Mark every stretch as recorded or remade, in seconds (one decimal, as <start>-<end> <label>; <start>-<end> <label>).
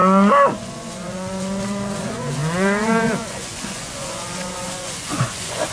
0.0-0.6 recorded; 0.6-5.7 remade